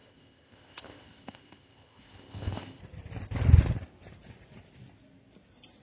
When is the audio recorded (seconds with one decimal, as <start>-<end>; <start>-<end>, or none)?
2.8-5.8